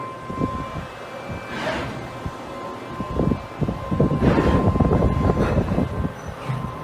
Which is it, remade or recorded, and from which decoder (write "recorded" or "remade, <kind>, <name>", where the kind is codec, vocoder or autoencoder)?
recorded